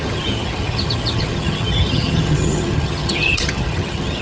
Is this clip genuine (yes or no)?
no